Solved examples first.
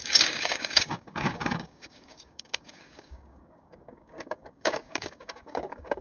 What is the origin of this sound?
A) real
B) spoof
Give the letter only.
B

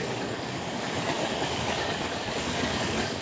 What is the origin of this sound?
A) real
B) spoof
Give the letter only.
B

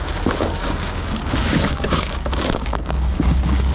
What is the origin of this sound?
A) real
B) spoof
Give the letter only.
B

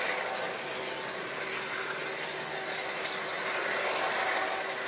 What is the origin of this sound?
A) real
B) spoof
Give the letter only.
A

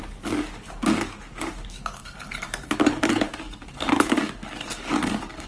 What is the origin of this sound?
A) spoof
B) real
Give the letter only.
A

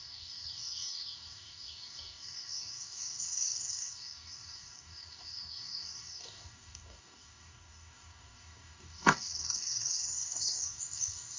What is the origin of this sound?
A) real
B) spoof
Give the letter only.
B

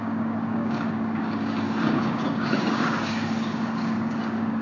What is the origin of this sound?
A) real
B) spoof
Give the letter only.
B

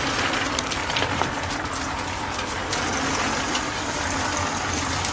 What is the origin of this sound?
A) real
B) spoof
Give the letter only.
A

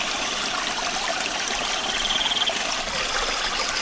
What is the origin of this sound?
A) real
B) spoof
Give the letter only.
A